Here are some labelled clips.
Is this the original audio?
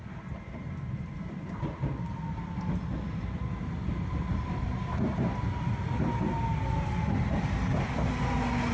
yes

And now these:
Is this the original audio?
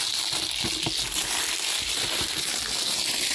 yes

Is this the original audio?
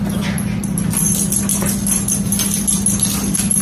yes